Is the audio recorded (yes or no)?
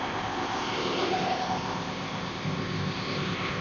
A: no